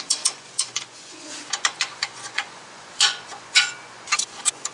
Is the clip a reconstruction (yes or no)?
yes